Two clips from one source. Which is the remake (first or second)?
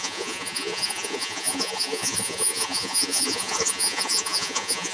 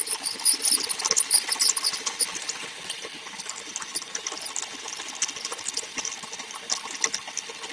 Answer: first